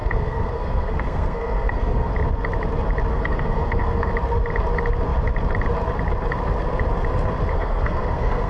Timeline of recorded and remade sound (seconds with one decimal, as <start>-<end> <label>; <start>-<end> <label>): 0.0-2.1 remade; 2.1-3.1 recorded; 3.1-4.1 remade; 4.1-7.5 recorded; 7.5-8.5 remade